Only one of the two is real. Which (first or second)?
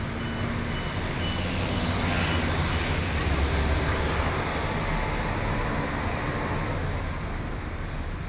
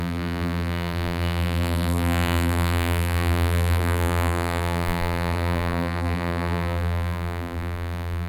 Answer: first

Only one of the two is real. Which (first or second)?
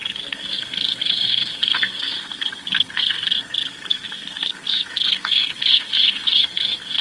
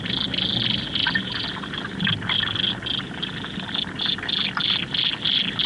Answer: second